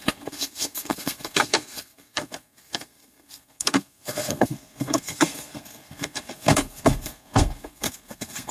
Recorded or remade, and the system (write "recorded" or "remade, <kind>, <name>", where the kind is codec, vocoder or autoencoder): remade, codec, SNAC